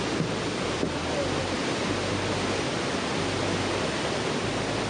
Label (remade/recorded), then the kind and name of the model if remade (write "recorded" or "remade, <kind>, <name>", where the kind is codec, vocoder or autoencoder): recorded